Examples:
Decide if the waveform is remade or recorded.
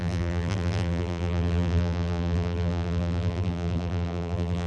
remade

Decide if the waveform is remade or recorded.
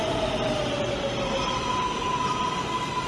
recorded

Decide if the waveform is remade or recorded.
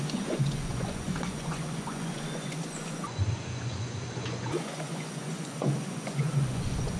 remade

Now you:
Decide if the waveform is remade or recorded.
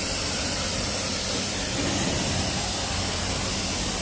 recorded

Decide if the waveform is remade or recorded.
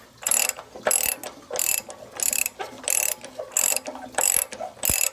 recorded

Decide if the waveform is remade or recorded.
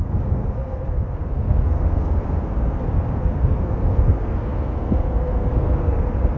remade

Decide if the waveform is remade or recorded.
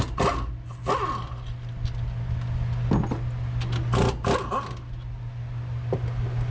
recorded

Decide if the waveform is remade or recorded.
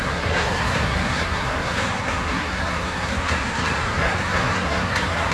remade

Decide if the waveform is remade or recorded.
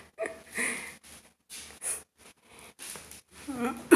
recorded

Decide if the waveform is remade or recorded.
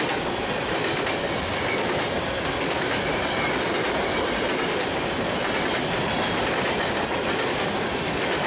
recorded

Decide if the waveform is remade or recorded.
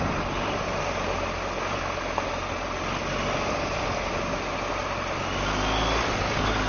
recorded